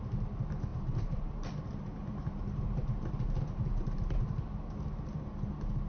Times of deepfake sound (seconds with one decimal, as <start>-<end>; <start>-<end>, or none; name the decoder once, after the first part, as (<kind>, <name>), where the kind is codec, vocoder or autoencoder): 0.7-4.2 (vocoder, BigVGAN v2)